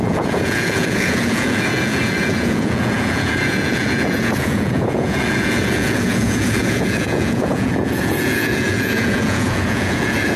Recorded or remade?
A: remade